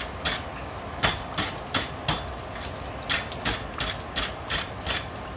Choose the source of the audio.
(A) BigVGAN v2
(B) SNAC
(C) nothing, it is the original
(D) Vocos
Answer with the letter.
C